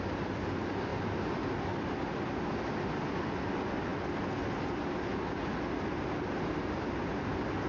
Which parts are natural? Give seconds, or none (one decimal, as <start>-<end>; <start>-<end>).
0.0-7.7